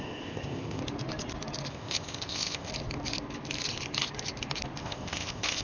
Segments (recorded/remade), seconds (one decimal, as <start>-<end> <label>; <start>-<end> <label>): 0.0-0.8 remade; 0.8-1.7 recorded; 1.7-2.7 remade; 2.7-4.8 recorded; 4.8-5.6 remade